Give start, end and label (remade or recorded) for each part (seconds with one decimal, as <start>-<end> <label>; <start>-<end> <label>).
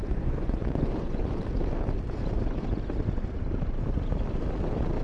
0.0-1.2 remade; 1.2-5.0 recorded